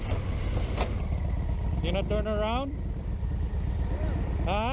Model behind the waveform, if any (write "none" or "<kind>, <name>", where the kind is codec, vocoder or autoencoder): none